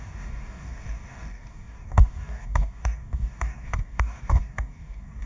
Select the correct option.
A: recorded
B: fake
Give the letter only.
B